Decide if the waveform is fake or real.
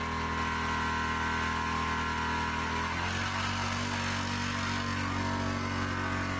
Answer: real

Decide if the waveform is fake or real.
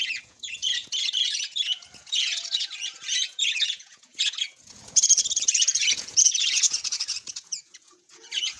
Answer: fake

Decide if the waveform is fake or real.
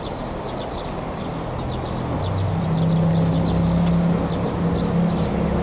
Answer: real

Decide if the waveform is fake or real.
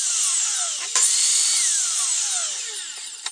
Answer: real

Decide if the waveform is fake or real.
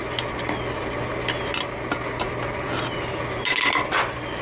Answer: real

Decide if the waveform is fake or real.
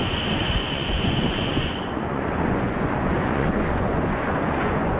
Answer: fake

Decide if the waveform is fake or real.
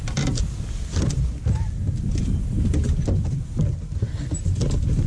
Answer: real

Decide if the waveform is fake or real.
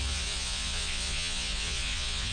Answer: fake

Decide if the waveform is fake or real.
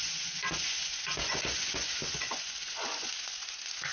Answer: fake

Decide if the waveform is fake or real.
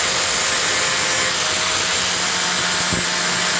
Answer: real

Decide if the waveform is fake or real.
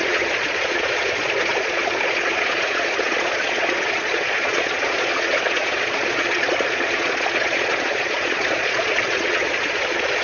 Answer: fake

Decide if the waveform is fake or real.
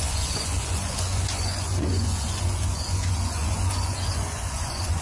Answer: fake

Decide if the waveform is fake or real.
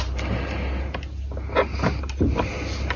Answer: real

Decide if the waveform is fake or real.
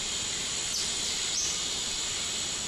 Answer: real